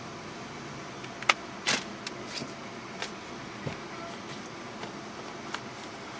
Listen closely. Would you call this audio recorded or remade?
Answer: recorded